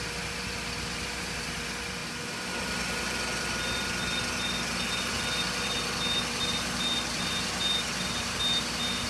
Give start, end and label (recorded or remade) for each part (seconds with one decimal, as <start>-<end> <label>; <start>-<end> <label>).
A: 0.0-9.1 recorded